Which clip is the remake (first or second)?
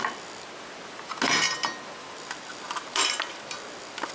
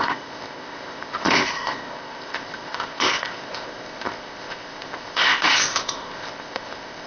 second